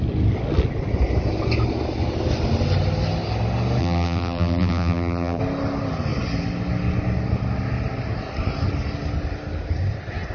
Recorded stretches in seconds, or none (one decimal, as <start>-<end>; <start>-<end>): 0.0-3.8; 5.4-10.3